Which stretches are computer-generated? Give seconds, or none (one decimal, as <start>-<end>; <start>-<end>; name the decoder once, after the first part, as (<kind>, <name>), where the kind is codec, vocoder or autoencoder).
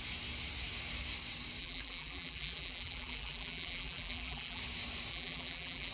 1.6-4.6 (vocoder, BigVGAN v2); 5.1-5.9